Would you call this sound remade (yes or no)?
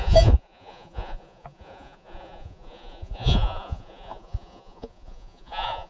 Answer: yes